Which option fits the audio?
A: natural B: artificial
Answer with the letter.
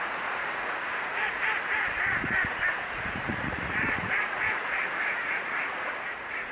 B